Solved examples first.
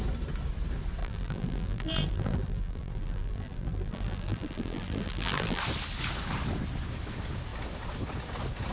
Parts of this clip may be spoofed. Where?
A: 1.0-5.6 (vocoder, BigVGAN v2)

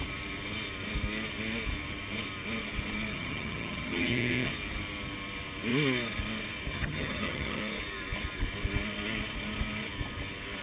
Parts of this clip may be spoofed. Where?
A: 3.1-4.5 (vocoder, HiFi-GAN); 6.7-7.6

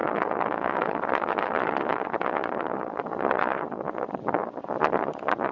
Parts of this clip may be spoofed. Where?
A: 0.0-5.5 (vocoder, Vocos)

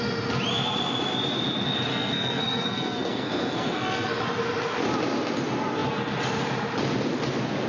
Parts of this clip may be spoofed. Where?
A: 1.9-4.2 (codec, SNAC)

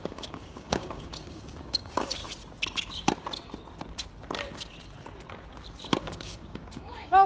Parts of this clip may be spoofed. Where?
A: 0.0-2.2 (codec, DAC); 6.0-7.3